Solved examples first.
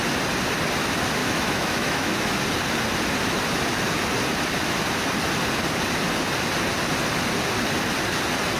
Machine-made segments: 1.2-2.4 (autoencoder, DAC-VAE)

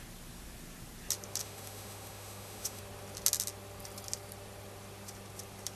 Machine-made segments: 1.4-2.8 (autoencoder, DAC-VAE)

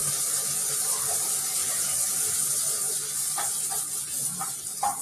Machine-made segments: none

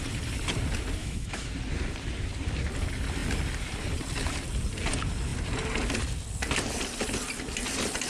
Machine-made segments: 1.0-1.5 (autoencoder, DAC-VAE)

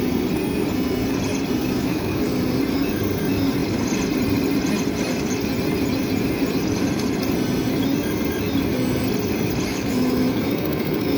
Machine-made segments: 1.6-2.3 (autoencoder, DAC-VAE); 9.7-11.2